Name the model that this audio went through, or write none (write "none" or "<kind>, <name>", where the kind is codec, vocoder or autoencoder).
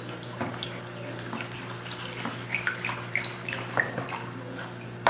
vocoder, BigVGAN v2